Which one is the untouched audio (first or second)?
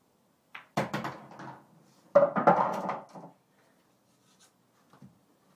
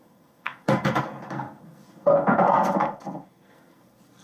first